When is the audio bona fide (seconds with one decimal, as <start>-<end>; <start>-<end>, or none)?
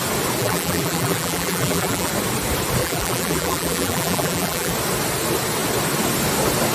0.0-0.4; 2.1-2.8; 4.7-6.7